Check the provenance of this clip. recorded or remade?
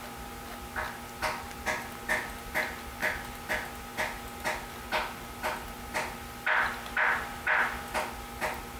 recorded